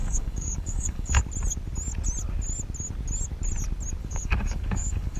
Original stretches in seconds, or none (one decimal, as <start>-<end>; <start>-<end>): 1.2-4.0